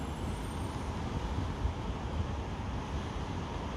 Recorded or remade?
recorded